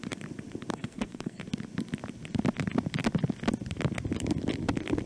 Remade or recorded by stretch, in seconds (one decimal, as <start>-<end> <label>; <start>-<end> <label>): 0.0-0.7 recorded; 0.7-1.4 remade; 1.4-5.1 recorded